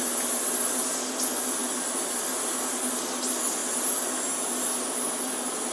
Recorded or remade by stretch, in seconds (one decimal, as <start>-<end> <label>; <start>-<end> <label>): 0.0-5.7 recorded